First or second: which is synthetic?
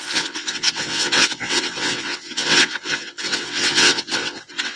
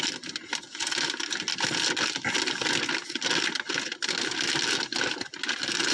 first